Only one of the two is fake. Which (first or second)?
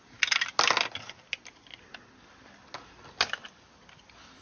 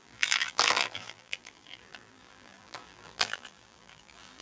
second